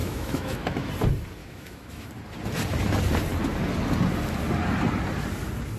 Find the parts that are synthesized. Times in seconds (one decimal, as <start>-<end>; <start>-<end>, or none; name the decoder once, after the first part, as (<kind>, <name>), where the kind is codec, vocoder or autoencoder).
0.0-0.9 (autoencoder, DAC-VAE); 1.4-2.1